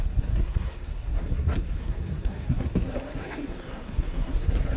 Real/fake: fake